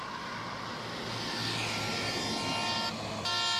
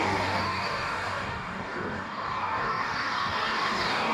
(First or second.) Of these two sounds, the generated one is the second